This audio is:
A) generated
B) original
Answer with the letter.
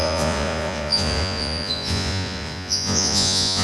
A